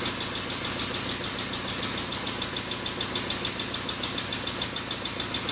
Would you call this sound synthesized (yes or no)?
no